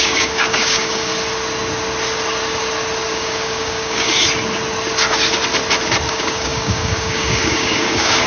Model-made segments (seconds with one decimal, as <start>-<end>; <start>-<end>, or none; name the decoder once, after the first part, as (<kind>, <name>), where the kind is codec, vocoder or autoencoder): 0.0-1.1 (codec, DAC); 3.1-4.2; 6.1-8.3